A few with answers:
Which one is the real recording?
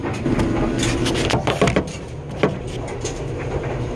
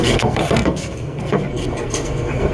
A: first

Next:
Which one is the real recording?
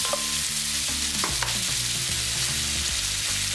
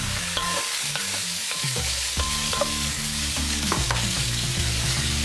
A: first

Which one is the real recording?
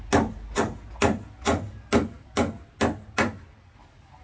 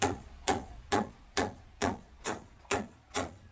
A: first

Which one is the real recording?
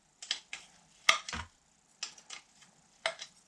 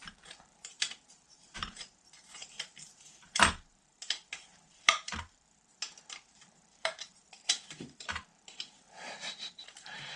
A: first